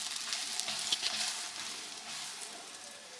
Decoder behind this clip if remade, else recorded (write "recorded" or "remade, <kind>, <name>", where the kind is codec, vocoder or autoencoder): recorded